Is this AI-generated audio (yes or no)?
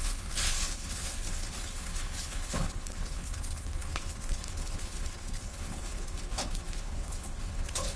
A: yes